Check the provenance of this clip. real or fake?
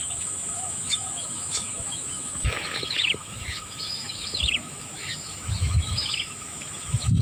fake